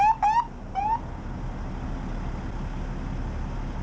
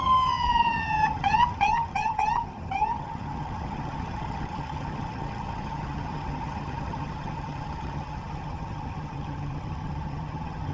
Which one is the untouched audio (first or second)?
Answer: first